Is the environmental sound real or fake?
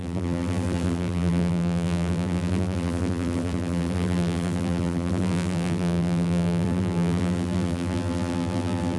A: fake